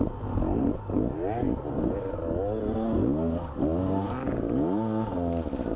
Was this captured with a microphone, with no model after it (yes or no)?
yes